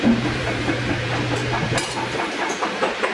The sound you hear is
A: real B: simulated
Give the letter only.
B